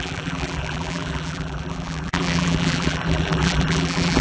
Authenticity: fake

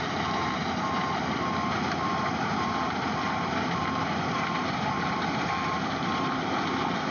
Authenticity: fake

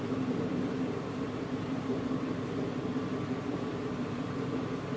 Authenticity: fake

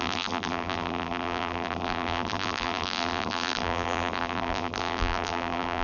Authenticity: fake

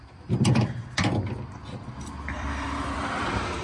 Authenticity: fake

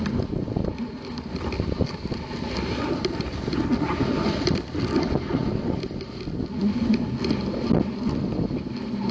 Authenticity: real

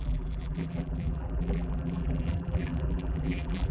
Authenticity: fake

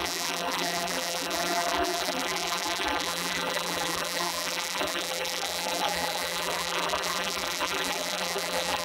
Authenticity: fake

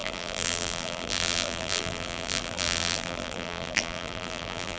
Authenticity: fake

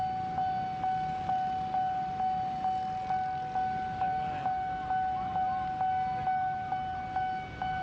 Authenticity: real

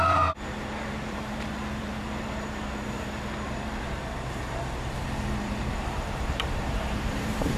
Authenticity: fake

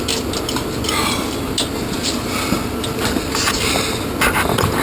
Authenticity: real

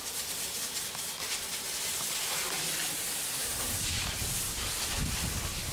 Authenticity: fake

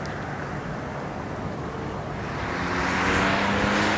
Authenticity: real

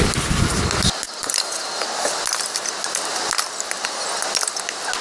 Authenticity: real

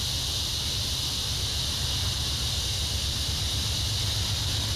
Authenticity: real